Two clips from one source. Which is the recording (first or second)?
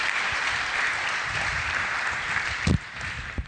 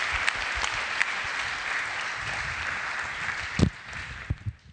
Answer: second